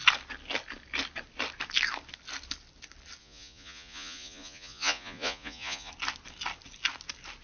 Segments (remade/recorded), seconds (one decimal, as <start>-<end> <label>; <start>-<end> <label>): 0.0-3.2 recorded; 3.2-5.9 remade; 5.9-7.4 recorded

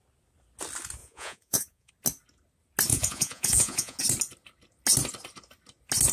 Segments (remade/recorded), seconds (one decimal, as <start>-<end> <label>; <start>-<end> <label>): 0.0-1.0 recorded; 1.0-1.9 remade; 1.9-2.9 recorded; 2.9-4.0 remade; 4.0-6.1 recorded